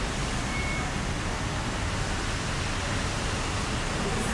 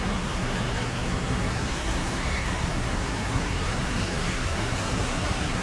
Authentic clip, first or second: first